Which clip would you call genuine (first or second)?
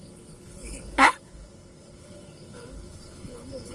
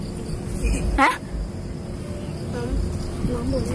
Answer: second